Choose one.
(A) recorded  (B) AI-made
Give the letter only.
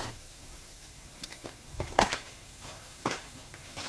B